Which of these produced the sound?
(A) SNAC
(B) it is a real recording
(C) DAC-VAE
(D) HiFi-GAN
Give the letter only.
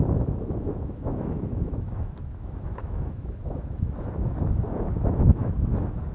C